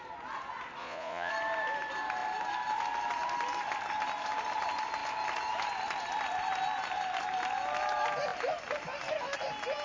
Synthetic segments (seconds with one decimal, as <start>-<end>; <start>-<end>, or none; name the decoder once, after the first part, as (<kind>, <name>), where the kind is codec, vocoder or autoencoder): 0.8-1.3 (vocoder, Vocos)

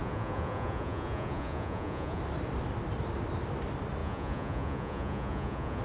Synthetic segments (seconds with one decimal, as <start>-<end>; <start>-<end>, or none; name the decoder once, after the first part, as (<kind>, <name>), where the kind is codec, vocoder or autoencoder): 0.0-2.2 (vocoder, Vocos); 4.0-5.8

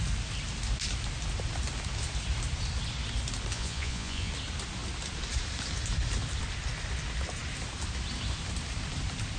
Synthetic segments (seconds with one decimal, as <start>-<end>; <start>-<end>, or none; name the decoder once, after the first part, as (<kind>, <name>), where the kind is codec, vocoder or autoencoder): 3.5-4.3 (vocoder, Vocos)

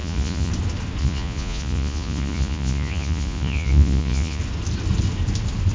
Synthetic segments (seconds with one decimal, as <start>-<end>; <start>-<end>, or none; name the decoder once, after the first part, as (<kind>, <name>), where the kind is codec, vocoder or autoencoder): 0.0-0.5 (vocoder, Vocos); 1.0-4.4